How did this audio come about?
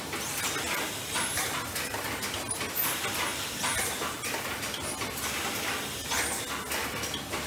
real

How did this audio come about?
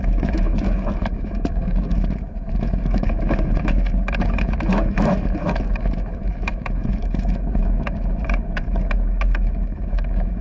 fake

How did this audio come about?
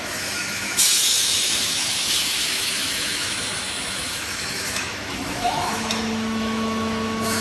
fake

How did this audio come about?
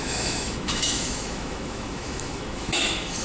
fake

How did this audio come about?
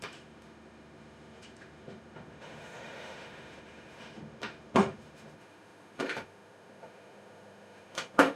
fake